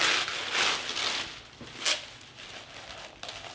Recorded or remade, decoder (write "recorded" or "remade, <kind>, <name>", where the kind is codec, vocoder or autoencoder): recorded